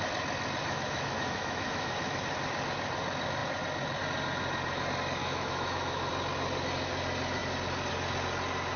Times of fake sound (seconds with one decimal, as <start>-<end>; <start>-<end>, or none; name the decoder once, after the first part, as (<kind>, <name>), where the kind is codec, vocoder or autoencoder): 0.6-2.2 (autoencoder, DAC-VAE); 5.2-6.1